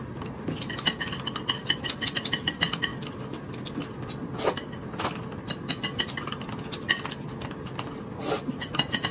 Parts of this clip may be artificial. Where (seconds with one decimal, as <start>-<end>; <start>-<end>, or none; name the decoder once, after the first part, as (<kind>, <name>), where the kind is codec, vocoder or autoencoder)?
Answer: none